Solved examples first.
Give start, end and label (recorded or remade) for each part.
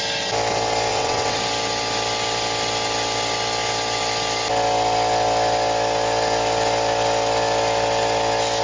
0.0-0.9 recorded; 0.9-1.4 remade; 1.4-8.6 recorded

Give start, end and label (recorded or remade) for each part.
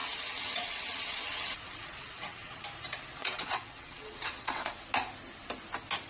0.0-2.6 remade; 2.6-3.2 recorded; 3.2-4.7 remade; 4.7-6.1 recorded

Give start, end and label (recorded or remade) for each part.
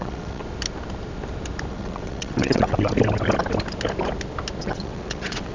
0.0-0.4 remade; 0.4-1.7 recorded; 1.7-2.9 remade; 2.9-4.6 recorded; 4.6-5.5 remade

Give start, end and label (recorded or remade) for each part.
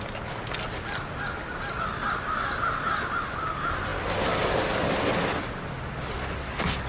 0.0-6.9 recorded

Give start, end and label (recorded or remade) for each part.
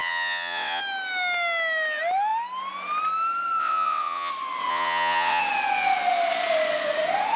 0.0-0.8 remade; 0.8-3.6 recorded; 3.6-4.3 remade; 4.3-4.7 recorded; 4.7-5.4 remade; 5.4-7.4 recorded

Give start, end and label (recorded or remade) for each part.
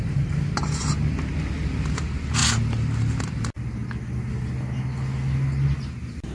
0.0-6.3 recorded